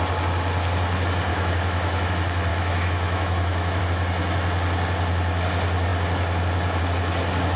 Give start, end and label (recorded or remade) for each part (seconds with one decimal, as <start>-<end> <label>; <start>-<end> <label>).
0.0-1.3 recorded; 1.3-2.1 remade; 2.1-2.5 recorded; 2.5-3.8 remade; 3.8-7.6 recorded